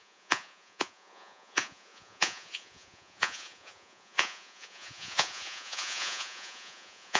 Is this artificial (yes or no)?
yes